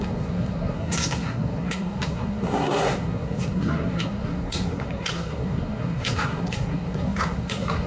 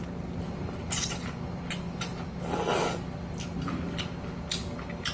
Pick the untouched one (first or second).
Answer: second